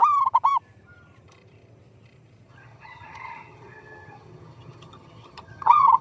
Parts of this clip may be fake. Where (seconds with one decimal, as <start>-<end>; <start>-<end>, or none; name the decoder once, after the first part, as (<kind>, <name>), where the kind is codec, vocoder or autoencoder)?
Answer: 2.5-6.0 (vocoder, HiFi-GAN)